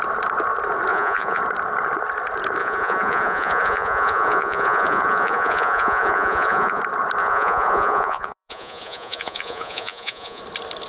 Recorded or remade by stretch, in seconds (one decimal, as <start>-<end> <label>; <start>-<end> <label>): 0.0-0.9 recorded; 0.9-1.4 remade; 1.4-2.6 recorded; 2.6-6.8 remade; 6.8-7.2 recorded; 7.2-10.4 remade; 10.4-10.9 recorded